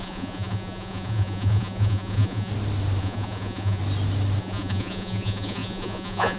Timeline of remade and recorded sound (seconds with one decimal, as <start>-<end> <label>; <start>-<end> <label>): 0.0-2.5 remade; 2.5-3.0 recorded; 3.0-3.8 remade; 3.8-4.4 recorded; 4.4-6.4 remade